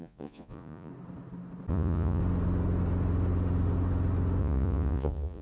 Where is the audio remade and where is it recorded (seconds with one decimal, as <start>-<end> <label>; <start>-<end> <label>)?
0.0-0.9 remade; 0.9-1.7 recorded; 1.7-2.2 remade; 2.2-4.4 recorded; 4.4-5.4 remade